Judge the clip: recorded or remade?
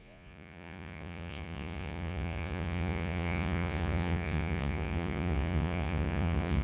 remade